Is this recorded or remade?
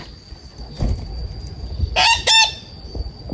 recorded